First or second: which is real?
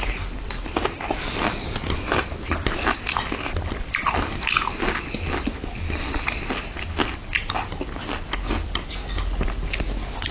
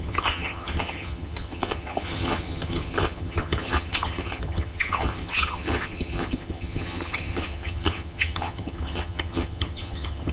first